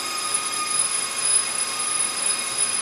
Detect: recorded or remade remade